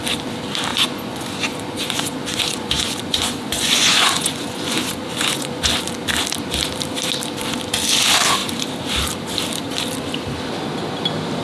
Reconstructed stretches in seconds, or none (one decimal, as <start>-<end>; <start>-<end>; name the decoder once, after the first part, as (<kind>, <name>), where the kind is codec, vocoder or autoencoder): 0.7-5.7 (vocoder, Vocos)